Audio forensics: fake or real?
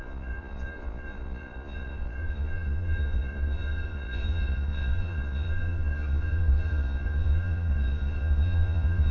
fake